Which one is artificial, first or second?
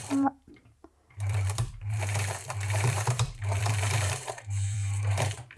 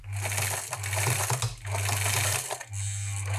first